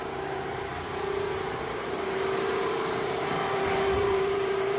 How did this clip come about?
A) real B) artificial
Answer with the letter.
B